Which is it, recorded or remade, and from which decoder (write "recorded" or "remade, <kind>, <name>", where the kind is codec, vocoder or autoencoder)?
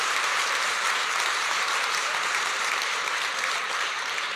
remade, vocoder, BigVGAN v2